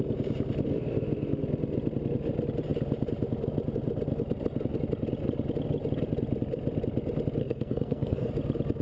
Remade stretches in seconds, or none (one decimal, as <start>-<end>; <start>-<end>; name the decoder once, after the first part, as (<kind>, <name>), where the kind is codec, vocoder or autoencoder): 7.4-8.3 (codec, SNAC)